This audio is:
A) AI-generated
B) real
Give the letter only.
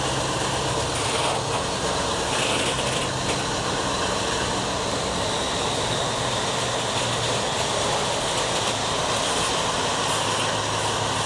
B